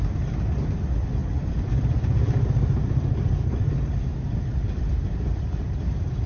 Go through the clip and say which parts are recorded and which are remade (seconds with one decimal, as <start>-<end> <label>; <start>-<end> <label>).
0.0-6.3 recorded